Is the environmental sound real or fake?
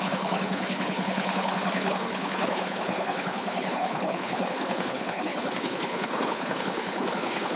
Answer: fake